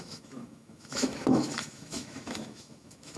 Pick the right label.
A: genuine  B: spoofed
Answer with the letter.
B